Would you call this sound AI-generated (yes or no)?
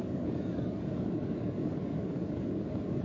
yes